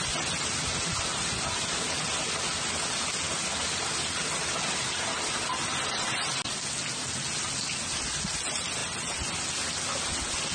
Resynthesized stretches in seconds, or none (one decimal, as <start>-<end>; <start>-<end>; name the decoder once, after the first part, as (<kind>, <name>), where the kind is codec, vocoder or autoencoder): none